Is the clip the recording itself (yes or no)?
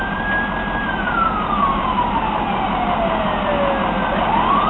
yes